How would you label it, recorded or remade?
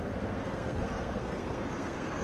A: remade